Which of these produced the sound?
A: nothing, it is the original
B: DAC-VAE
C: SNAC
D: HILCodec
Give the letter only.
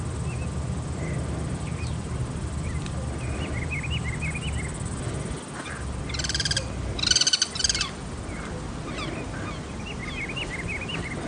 A